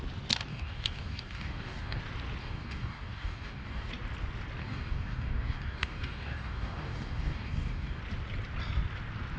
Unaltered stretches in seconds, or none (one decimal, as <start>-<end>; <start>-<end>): 0.0-0.5; 2.0-2.4; 3.9-4.6; 8.0-9.4